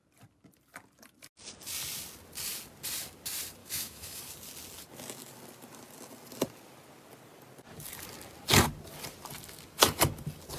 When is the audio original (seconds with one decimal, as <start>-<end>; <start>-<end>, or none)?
0.0-3.6; 4.2-10.6